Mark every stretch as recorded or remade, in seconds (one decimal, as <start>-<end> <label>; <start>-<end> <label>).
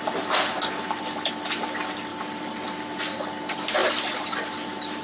0.0-5.0 recorded